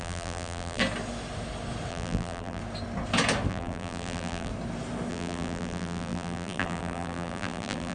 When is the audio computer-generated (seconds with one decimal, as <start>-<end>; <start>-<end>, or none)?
0.0-0.8; 1.9-2.6; 3.5-4.5; 5.1-7.9